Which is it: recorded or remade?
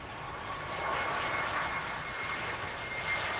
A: recorded